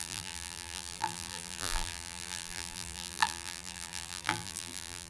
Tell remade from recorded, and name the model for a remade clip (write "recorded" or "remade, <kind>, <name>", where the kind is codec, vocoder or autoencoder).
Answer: remade, vocoder, BigVGAN v2